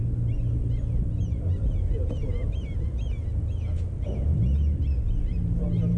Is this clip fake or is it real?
real